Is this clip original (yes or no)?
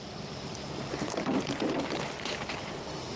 yes